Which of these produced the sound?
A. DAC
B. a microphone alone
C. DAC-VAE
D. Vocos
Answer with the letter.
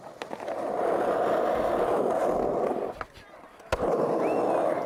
B